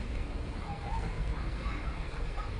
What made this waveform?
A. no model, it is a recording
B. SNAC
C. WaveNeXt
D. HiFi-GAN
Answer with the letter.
B